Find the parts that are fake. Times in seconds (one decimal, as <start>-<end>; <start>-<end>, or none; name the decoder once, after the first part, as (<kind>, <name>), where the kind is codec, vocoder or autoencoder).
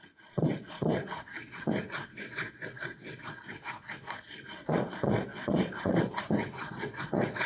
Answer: 0.0-7.5 (vocoder, Vocos)